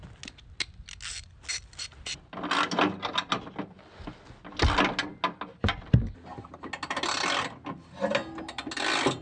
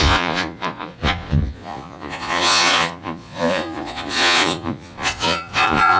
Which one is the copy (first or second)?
second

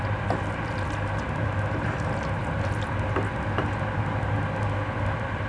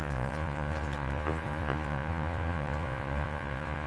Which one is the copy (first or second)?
second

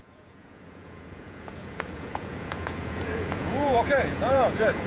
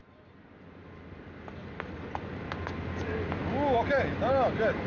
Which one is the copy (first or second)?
first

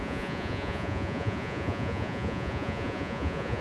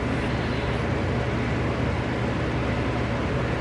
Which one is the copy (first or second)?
first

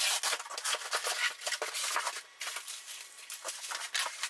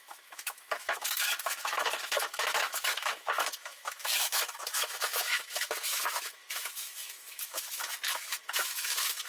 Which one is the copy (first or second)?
second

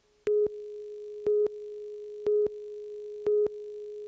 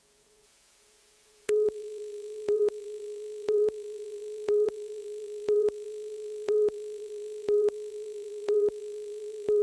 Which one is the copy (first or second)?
second